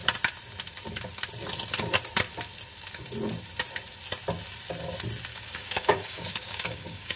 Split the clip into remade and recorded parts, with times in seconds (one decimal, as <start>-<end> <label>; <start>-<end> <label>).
0.0-5.3 recorded; 5.3-7.2 remade